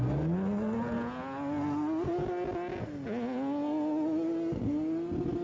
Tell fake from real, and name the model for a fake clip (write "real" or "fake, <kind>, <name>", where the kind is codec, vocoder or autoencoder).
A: real